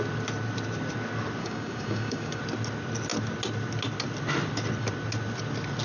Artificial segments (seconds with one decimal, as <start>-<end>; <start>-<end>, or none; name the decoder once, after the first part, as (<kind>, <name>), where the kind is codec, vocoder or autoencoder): 1.4-2.4 (codec, DAC)